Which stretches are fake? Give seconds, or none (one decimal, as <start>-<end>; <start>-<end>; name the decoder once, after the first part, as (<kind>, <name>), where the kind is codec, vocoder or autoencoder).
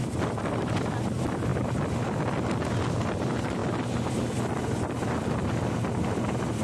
0.0-1.5 (vocoder, BigVGAN v2); 2.9-3.6; 4.1-6.6